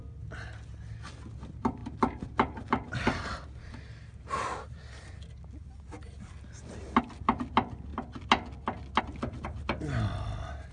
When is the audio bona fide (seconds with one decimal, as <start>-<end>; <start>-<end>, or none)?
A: 0.0-10.7